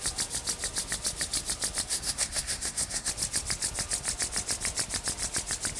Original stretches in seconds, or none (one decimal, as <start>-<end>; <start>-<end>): 0.0-1.9; 3.1-5.8